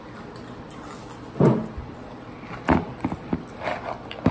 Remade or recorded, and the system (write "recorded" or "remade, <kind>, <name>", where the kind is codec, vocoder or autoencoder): recorded